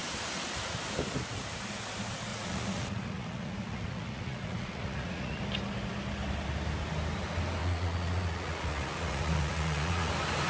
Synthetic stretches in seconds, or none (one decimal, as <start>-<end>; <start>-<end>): 2.3-5.4; 7.6-10.1